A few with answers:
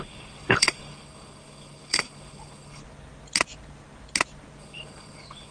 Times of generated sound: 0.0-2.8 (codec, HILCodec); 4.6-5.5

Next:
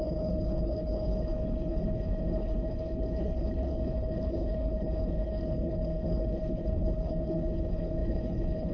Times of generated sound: 0.0-8.7 (codec, HILCodec)

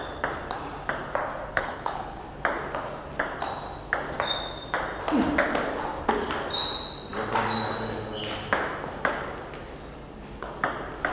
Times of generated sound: 1.5-2.2 (codec, HILCodec)

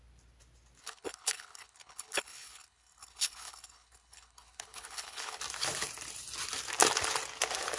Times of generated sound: 0.8-5.4 (codec, HILCodec)